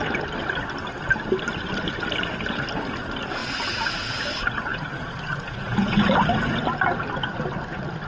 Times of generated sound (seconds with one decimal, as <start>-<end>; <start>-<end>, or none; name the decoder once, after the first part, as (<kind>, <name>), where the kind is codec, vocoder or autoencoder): 3.4-4.2 (vocoder, Vocos); 4.7-6.1